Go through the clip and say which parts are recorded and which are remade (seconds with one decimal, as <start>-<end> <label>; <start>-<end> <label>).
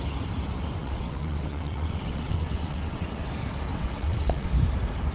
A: 0.0-0.8 recorded; 0.8-3.3 remade; 3.3-3.7 recorded; 3.7-4.5 remade; 4.5-5.1 recorded